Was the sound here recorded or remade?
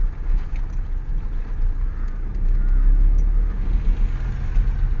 recorded